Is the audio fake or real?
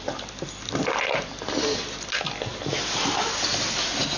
real